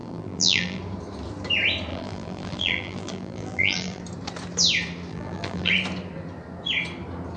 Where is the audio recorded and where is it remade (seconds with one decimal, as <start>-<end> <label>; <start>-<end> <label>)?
0.0-0.8 remade; 0.8-1.9 recorded; 1.9-4.0 remade; 4.0-5.1 recorded; 5.1-5.7 remade; 5.7-7.4 recorded